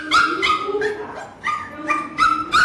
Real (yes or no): yes